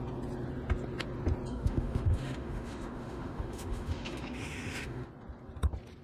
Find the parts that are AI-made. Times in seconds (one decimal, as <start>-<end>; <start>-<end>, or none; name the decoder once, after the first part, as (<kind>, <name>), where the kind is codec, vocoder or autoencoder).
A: 1.5-5.1 (autoencoder, DAC-VAE)